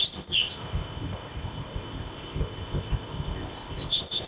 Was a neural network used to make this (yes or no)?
yes